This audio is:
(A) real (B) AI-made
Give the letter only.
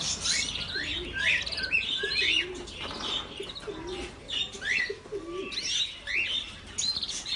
A